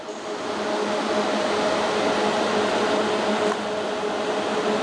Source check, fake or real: real